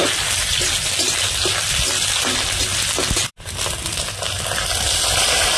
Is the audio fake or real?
real